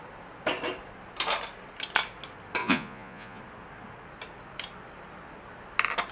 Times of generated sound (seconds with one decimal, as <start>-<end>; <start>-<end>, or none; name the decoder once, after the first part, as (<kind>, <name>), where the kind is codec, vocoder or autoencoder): 2.6-3.4 (vocoder, Vocos)